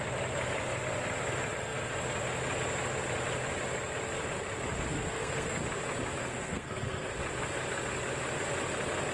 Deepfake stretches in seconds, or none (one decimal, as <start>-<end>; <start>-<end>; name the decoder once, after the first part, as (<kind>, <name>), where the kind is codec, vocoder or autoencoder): 4.9-5.6 (codec, SNAC); 6.2-7.1